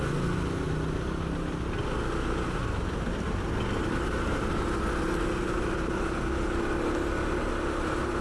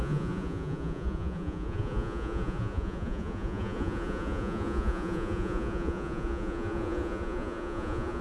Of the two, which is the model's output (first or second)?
second